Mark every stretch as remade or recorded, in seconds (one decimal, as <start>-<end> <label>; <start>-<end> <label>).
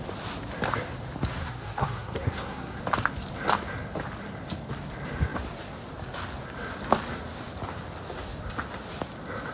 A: 0.0-1.4 recorded; 1.4-2.8 remade; 2.8-9.5 recorded